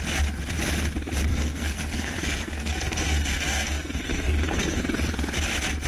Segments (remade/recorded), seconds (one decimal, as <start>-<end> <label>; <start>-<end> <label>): 0.0-1.3 recorded; 1.3-4.8 remade; 4.8-5.9 recorded